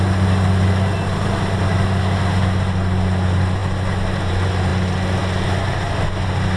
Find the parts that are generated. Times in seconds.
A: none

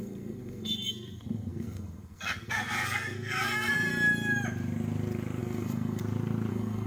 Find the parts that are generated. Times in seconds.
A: 0.0-3.9 (codec, SNAC); 5.4-6.0; 6.5-6.9